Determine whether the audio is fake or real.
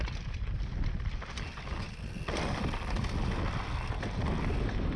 real